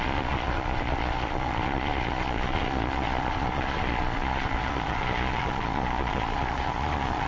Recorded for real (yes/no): no